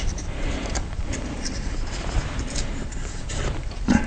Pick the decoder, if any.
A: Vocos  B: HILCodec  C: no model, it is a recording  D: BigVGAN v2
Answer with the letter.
D